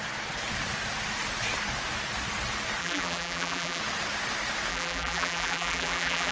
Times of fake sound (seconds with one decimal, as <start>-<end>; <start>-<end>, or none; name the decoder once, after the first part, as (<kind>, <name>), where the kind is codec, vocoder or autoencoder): 2.8-3.8 (vocoder, BigVGAN v2); 4.7-6.3